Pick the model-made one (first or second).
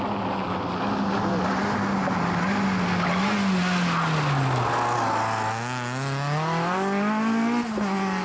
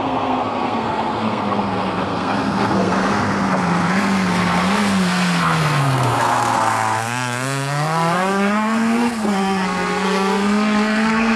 second